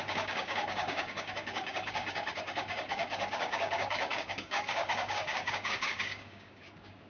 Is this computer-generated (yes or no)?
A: yes